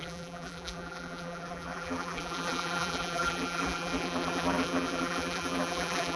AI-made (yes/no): yes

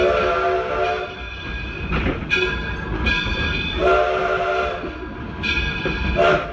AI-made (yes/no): no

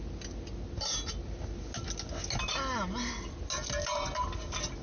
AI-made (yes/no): no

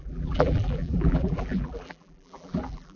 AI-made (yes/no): yes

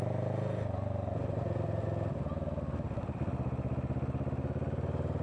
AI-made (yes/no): no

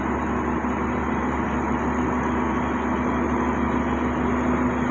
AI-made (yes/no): no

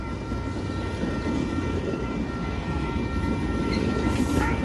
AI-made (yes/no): yes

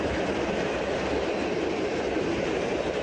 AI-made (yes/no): yes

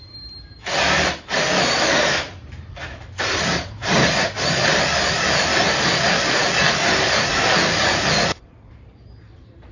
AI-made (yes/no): yes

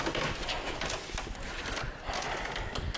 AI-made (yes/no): no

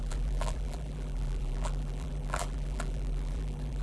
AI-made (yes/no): yes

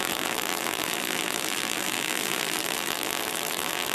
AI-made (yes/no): yes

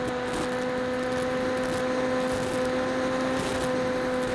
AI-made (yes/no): no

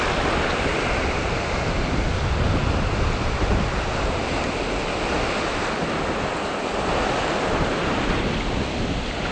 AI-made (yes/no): no